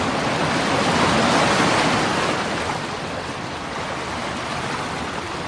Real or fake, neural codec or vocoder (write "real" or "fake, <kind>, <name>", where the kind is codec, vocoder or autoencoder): real